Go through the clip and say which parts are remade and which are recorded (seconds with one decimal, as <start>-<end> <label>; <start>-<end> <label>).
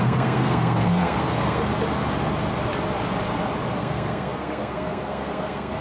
0.0-1.7 remade; 1.7-3.8 recorded; 3.8-5.8 remade